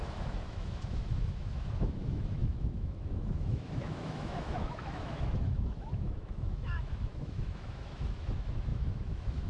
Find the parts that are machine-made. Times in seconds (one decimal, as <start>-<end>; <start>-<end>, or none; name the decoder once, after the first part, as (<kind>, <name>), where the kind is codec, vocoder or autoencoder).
0.0-9.5 (autoencoder, DAC-VAE)

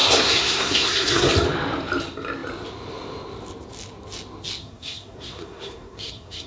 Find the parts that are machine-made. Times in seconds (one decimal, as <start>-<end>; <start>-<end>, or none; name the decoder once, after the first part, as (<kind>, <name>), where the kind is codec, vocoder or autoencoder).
0.0-1.3 (codec, SNAC); 4.6-6.5